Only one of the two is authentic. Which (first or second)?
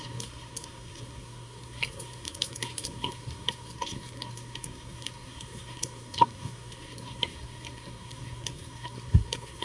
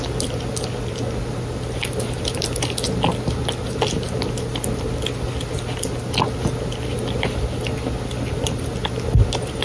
second